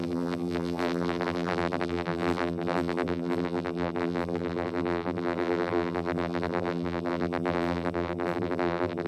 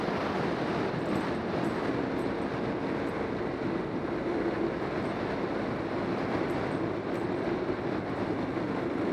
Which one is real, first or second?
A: second